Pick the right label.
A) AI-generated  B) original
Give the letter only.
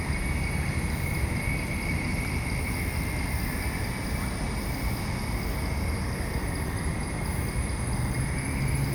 B